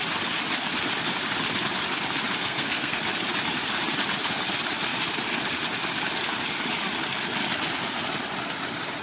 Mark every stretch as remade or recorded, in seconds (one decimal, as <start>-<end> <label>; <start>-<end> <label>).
0.0-2.4 recorded; 2.4-3.0 remade; 3.0-9.0 recorded